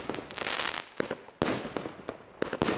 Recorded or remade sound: recorded